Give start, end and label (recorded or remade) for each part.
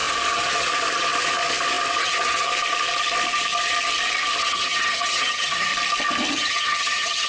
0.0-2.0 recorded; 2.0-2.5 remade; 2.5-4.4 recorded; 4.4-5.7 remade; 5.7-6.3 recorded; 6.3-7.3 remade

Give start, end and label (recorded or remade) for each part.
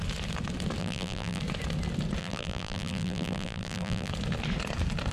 0.0-0.8 recorded; 0.8-1.4 remade; 1.4-2.2 recorded; 2.2-4.1 remade; 4.1-5.1 recorded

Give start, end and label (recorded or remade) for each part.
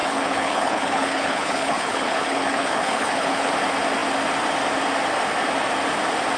0.0-3.5 remade; 3.5-6.4 recorded